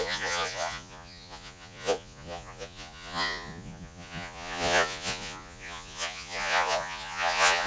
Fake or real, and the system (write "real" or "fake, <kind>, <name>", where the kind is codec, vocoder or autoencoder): fake, vocoder, Vocos